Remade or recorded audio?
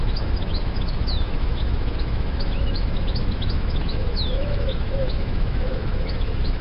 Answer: remade